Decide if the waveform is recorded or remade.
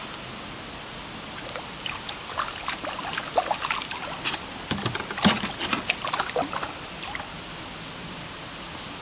recorded